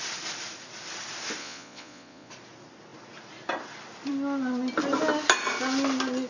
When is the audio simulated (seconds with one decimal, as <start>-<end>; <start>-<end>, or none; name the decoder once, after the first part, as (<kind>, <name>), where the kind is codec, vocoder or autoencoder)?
1.4-2.3 (vocoder, Vocos)